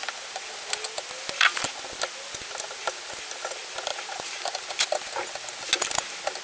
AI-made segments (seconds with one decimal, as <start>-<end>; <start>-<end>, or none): none